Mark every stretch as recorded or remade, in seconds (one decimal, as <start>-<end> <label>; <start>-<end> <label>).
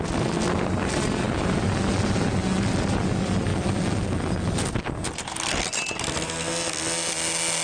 0.0-7.6 recorded